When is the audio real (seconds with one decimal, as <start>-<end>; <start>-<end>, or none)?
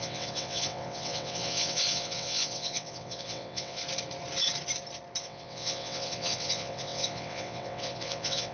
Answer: 3.8-5.2